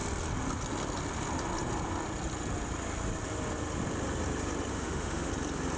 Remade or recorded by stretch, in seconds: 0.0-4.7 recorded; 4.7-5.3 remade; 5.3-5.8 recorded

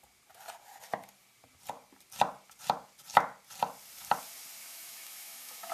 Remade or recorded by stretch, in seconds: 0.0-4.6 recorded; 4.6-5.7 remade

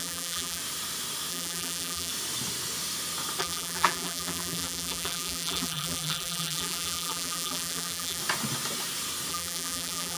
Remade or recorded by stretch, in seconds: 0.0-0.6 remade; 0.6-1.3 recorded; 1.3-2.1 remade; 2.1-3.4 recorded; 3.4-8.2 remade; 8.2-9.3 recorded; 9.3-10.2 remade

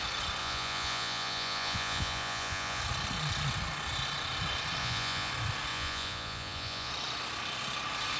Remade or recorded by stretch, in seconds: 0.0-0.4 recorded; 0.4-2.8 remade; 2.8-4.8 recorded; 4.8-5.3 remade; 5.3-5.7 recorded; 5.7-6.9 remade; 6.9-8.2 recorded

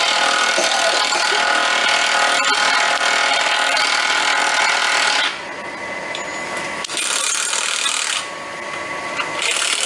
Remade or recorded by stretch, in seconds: 0.0-9.9 recorded